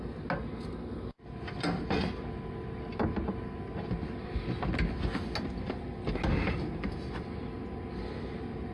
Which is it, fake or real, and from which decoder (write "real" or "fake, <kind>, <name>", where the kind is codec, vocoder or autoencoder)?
real